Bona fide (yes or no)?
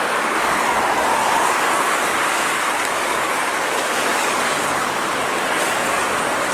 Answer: no